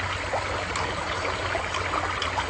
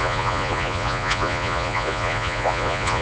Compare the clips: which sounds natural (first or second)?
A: first